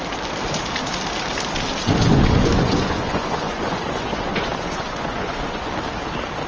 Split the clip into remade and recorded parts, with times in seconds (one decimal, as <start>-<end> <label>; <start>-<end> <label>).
0.0-1.8 recorded; 1.8-5.7 remade; 5.7-6.5 recorded